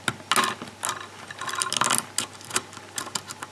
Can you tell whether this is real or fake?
real